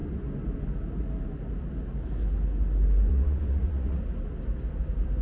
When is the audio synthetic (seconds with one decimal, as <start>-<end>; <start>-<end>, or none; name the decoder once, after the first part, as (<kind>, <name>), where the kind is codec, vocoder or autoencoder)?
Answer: 3.1-4.0 (vocoder, Vocos)